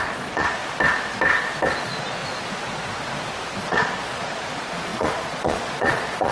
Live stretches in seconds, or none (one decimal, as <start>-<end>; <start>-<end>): 0.6-1.8; 2.2-3.6